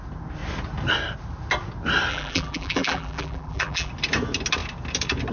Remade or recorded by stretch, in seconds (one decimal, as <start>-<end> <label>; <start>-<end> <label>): 0.0-2.1 recorded; 2.1-3.9 remade; 3.9-5.3 recorded